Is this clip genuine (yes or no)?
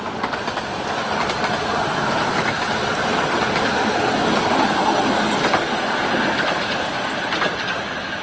yes